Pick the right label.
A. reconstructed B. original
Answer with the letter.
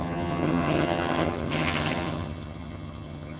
A